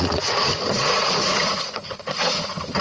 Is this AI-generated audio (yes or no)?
yes